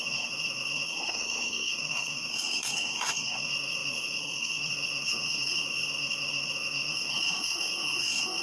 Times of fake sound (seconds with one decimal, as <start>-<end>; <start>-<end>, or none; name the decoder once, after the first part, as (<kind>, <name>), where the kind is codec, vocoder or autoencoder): 0.0-8.4 (codec, SNAC)